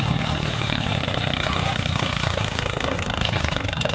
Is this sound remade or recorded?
remade